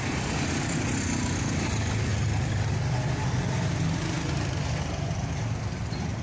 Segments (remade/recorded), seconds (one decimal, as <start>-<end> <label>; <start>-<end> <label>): 0.0-6.2 recorded